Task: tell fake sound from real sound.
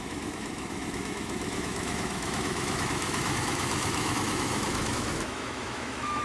fake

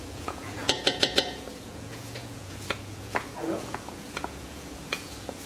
fake